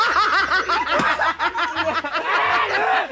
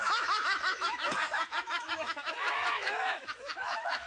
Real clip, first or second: first